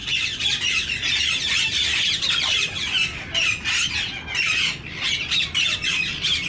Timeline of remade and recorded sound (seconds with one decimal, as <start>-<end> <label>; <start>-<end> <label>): 0.0-3.9 remade; 3.9-6.5 recorded